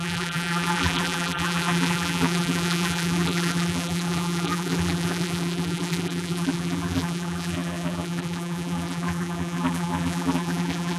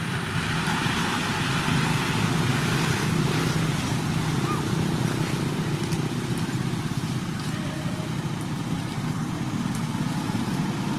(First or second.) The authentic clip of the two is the second